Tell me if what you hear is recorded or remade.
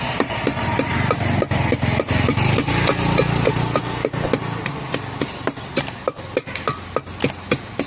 recorded